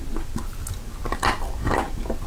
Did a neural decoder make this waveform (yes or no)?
no